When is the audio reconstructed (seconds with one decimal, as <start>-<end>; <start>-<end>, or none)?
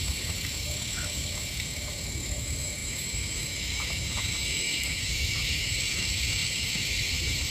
0.0-7.5